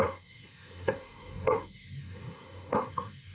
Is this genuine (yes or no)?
no